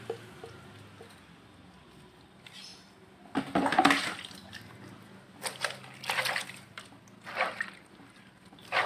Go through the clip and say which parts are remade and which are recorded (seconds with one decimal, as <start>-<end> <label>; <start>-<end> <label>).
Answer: 0.0-8.9 recorded